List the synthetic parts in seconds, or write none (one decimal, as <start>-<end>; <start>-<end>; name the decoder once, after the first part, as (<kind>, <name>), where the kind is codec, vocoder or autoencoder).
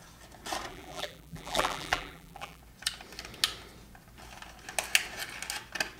0.7-2.6 (vocoder, BigVGAN v2)